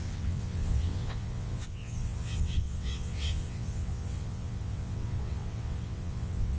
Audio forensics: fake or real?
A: fake